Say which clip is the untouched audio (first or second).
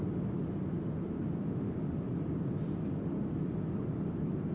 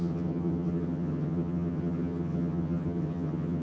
first